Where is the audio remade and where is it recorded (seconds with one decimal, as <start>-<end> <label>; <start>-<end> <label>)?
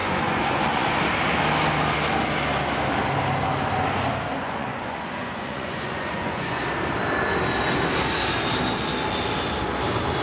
0.0-1.0 remade; 1.0-4.3 recorded; 4.3-6.6 remade; 6.6-10.2 recorded